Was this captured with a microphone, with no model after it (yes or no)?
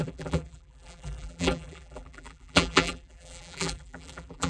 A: no